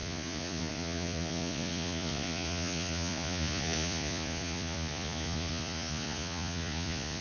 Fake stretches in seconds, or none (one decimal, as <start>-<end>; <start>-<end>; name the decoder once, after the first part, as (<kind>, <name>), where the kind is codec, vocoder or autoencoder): 0.0-7.2 (vocoder, Vocos)